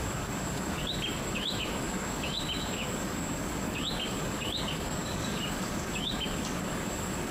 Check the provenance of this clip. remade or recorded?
remade